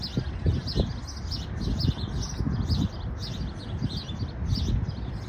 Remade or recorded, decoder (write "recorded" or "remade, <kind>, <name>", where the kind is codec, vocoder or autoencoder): recorded